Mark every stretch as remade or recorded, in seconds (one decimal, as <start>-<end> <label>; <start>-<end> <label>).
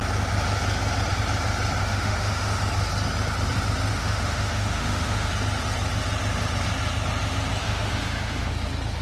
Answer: 0.0-1.8 recorded; 1.8-2.6 remade; 2.6-3.9 recorded; 3.9-5.3 remade; 5.3-7.6 recorded; 7.6-8.5 remade; 8.5-9.0 recorded